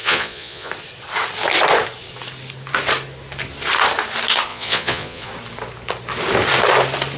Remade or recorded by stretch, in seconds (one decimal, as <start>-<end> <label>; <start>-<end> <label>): 0.0-0.7 remade; 0.7-4.5 recorded; 4.5-5.3 remade; 5.3-7.2 recorded